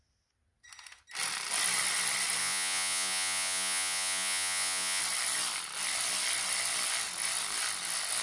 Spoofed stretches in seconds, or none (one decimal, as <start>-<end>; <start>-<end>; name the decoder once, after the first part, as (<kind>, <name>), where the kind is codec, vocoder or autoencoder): 2.4-5.0 (vocoder, Vocos)